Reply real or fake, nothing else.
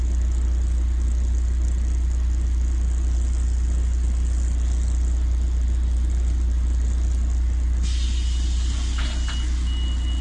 real